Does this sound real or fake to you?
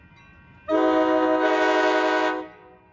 real